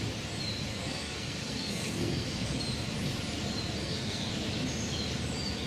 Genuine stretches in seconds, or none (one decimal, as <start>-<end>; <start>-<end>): 0.0-0.7; 2.6-3.8; 4.3-5.7